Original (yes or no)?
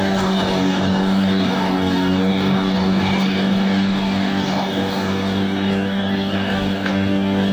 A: no